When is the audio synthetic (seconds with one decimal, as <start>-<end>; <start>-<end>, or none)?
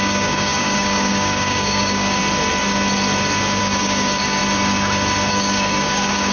0.0-2.2; 3.6-4.4; 5.3-6.3